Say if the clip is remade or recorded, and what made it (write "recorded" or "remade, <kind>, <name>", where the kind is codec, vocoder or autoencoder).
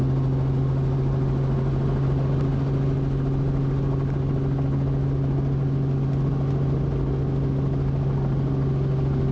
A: recorded